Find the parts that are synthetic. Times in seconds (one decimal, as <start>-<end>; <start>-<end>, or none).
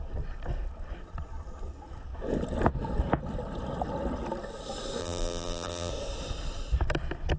5.0-5.9